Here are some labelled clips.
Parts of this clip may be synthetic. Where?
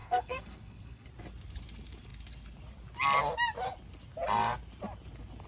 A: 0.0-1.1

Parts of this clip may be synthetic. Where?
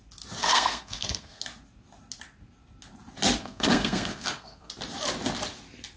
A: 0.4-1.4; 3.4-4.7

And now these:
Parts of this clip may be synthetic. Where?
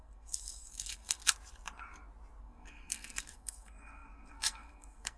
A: 0.0-1.2; 2.4-5.2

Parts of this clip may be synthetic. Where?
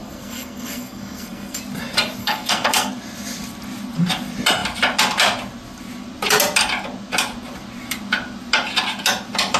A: 0.0-1.6; 2.2-2.9